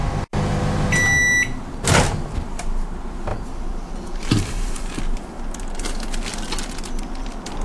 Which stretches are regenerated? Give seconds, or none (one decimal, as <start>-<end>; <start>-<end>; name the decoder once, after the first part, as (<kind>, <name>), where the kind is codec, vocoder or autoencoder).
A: 3.3-5.0 (vocoder, BigVGAN v2)